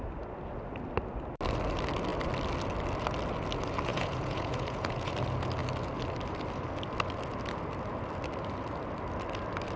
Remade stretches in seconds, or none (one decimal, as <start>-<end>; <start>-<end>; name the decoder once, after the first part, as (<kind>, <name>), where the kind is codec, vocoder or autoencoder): 3.9-5.1 (vocoder, Vocos)